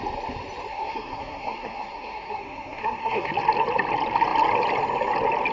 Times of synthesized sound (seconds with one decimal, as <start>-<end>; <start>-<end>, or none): 0.7-3.3